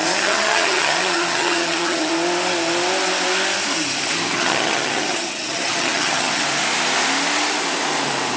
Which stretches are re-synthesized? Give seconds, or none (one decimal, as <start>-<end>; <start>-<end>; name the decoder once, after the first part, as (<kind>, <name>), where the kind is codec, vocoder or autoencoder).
0.0-2.1 (vocoder, HiFi-GAN); 4.3-6.4